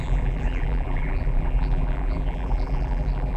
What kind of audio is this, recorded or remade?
remade